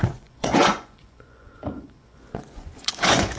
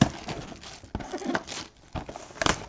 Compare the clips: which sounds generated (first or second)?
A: first